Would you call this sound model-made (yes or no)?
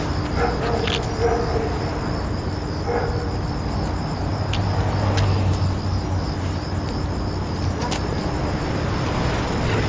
no